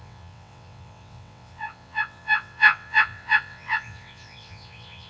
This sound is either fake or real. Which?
fake